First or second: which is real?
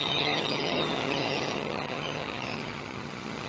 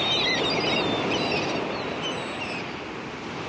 second